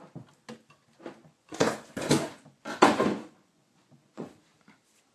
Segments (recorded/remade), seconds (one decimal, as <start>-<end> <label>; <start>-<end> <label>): 0.0-1.2 recorded; 1.2-4.3 remade; 4.3-5.1 recorded

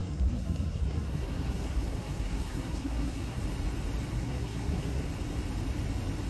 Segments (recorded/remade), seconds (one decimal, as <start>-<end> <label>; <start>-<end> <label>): 0.0-3.4 remade; 3.4-4.1 recorded; 4.1-5.1 remade; 5.1-6.3 recorded

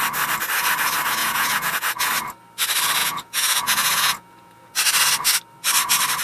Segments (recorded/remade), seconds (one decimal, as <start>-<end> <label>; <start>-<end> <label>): 0.0-1.2 recorded; 1.2-2.1 remade; 2.1-3.0 recorded; 3.0-4.7 remade; 4.7-6.2 recorded

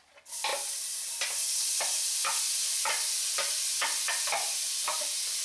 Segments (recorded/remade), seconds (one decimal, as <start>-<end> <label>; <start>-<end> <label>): 0.0-5.4 recorded

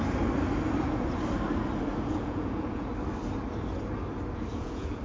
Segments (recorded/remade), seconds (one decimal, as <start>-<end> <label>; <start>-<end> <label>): 0.0-1.9 recorded; 1.9-2.9 remade; 2.9-4.5 recorded; 4.5-5.0 remade

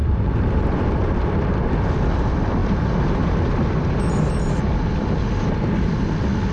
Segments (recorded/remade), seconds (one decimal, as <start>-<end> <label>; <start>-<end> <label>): 0.0-1.4 remade; 1.4-6.5 recorded

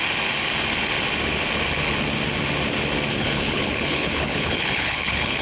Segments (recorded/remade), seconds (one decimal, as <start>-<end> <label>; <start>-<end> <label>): 0.0-3.1 recorded; 3.1-5.4 remade

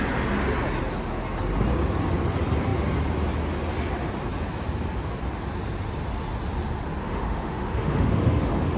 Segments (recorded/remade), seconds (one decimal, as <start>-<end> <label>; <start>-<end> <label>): 0.0-7.0 recorded; 7.0-8.8 remade